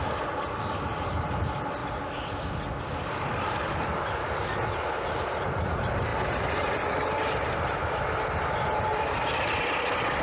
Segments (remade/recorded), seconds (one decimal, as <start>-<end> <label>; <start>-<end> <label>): 0.0-1.8 remade; 1.8-2.8 recorded; 2.8-4.4 remade; 4.4-5.2 recorded; 5.2-6.1 remade; 6.1-8.0 recorded; 8.0-10.2 remade